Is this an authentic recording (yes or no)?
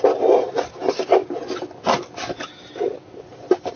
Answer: yes